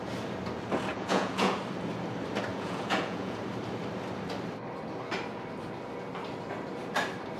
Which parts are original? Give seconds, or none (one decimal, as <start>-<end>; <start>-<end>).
0.0-0.9; 1.6-2.5; 3.4-7.4